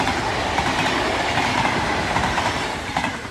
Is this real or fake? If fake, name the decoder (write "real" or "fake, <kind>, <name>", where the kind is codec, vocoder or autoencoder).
fake, vocoder, BigVGAN v2